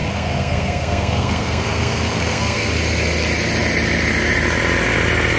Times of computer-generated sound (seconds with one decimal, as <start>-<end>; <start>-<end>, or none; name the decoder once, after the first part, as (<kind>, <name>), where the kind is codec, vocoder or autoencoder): 0.0-2.7 (codec, SNAC)